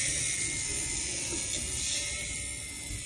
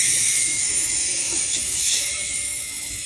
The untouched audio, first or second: first